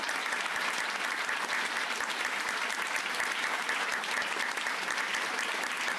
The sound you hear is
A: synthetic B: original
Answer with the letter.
B